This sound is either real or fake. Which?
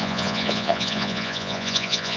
fake